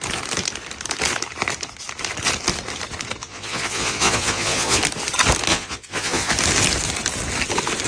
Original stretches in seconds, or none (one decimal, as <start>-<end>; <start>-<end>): 0.0-3.2; 4.8-5.5; 6.3-7.9